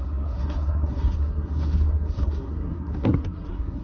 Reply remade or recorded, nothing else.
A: remade